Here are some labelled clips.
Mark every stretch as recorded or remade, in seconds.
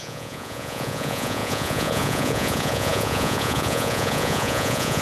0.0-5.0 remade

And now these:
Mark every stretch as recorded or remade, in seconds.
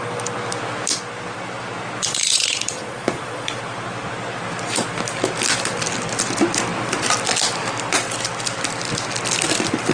0.0-2.0 recorded; 2.0-3.6 remade; 3.6-9.9 recorded